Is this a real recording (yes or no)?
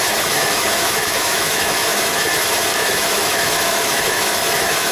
no